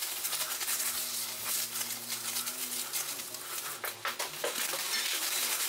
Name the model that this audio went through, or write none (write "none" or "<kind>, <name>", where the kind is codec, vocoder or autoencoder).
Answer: none